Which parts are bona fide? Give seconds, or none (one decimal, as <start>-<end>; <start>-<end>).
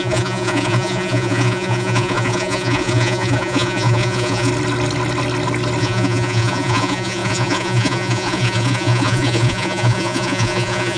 4.5-5.8